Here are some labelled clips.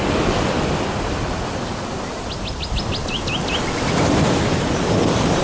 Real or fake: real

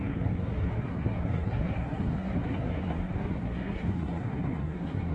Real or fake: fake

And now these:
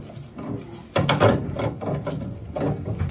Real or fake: real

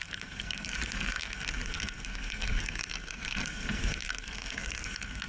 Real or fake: fake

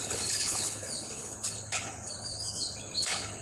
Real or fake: fake